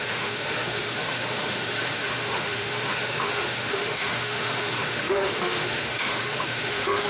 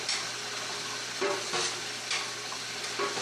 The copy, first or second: first